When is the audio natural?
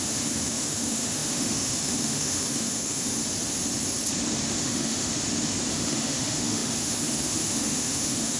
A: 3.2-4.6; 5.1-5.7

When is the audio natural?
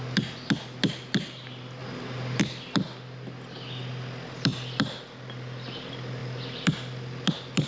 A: 0.0-7.7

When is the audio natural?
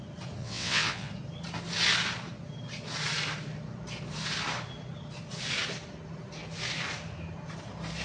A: 0.0-0.4; 1.1-8.0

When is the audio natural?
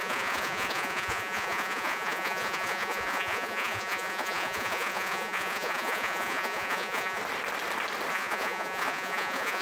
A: 7.2-8.1